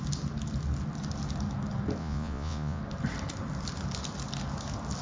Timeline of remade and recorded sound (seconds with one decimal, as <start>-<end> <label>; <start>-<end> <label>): 0.0-2.0 recorded; 2.0-2.8 remade; 2.8-5.0 recorded